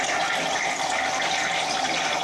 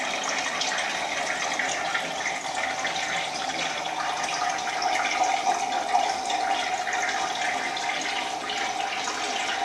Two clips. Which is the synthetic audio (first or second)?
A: first